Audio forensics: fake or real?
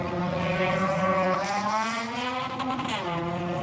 fake